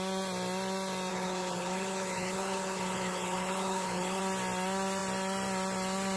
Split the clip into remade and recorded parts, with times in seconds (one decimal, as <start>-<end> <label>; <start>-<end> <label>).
0.0-1.1 recorded; 1.1-4.2 remade; 4.2-6.2 recorded